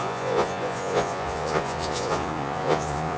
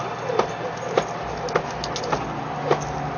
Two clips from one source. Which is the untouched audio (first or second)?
second